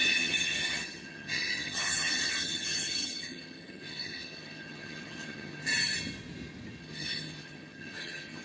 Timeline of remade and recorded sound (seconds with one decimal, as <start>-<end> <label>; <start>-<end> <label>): 0.0-5.7 remade; 5.7-6.8 recorded; 6.8-8.4 remade